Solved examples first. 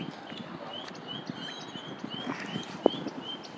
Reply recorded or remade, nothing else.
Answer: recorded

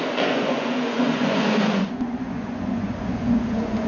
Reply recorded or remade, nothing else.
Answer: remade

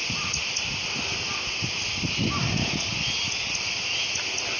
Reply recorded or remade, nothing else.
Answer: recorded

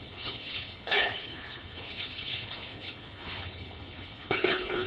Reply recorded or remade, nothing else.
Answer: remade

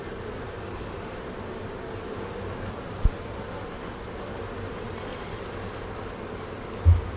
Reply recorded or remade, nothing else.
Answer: recorded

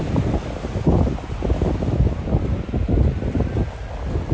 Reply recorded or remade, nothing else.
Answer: recorded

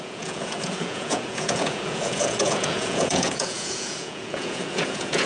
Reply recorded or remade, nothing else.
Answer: remade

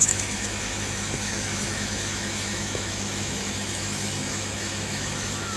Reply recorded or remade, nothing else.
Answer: remade